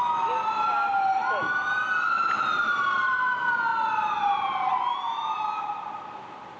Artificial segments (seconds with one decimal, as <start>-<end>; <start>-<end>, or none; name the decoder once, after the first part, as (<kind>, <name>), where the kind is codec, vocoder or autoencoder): none